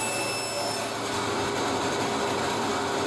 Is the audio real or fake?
real